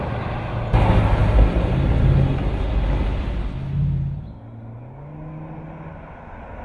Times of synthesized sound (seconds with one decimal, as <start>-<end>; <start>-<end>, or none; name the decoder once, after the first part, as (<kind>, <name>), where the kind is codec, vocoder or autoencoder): none